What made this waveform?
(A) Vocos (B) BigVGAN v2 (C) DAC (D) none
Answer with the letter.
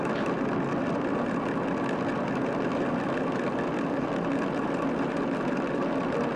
D